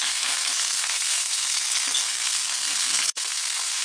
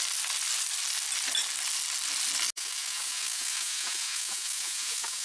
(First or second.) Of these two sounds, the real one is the second